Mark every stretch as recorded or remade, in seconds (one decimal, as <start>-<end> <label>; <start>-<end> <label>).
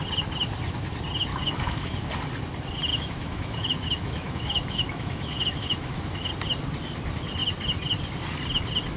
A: 0.0-1.3 recorded; 1.3-2.1 remade; 2.1-2.9 recorded; 2.9-6.3 remade; 6.3-9.0 recorded